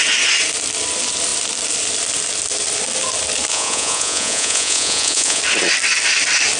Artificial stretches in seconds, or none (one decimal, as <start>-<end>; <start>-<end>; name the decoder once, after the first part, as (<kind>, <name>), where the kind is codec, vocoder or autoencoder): 3.5-5.4 (vocoder, Vocos)